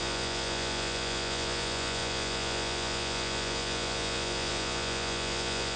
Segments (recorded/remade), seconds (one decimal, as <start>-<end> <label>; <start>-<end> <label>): 0.0-5.8 remade